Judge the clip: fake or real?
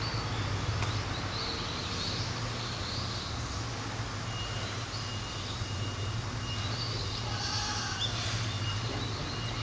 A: real